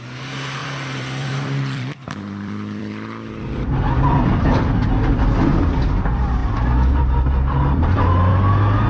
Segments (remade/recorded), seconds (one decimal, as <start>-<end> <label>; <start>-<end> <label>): 0.0-0.6 recorded; 0.6-5.6 remade; 5.6-8.9 recorded